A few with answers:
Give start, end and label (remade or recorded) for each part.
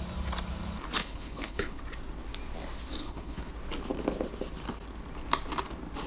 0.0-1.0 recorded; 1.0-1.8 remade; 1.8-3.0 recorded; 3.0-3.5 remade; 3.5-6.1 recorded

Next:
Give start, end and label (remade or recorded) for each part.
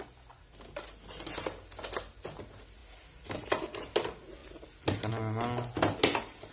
0.0-6.5 recorded